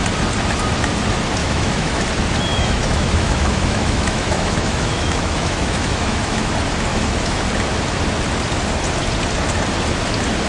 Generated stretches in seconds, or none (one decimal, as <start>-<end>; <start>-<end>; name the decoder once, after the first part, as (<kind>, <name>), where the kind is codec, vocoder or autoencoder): 1.4-2.0 (autoencoder, DAC-VAE); 2.5-6.5; 6.9-7.4